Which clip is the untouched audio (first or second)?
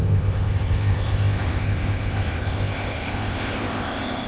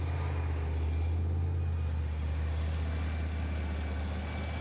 second